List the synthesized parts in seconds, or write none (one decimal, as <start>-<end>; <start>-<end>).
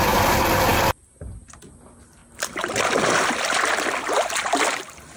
none